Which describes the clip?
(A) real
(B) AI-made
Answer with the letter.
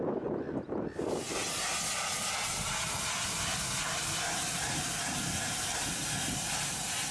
A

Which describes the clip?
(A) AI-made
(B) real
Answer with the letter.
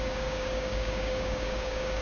A